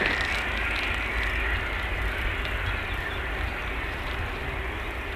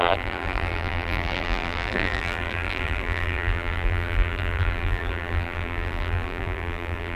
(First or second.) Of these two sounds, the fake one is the second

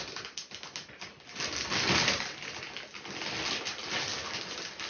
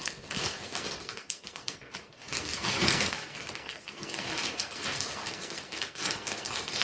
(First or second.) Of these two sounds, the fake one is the second